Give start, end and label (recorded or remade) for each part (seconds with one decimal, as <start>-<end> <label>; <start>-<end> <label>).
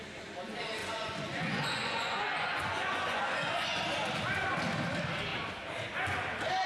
0.0-0.8 recorded; 0.8-3.8 remade; 3.8-6.7 recorded